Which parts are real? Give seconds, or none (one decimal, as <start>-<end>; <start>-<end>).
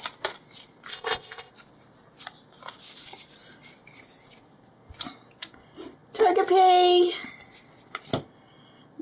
0.0-0.9; 1.5-9.0